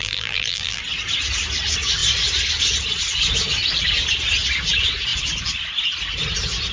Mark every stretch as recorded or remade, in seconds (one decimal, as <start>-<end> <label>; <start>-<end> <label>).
0.0-0.8 remade; 0.8-6.7 recorded

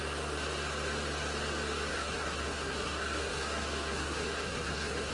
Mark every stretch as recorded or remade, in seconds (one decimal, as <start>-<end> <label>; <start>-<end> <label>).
0.0-1.9 recorded; 1.9-5.1 remade

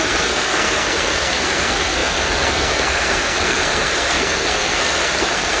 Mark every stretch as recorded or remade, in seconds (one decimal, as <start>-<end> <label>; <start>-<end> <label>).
0.0-5.6 remade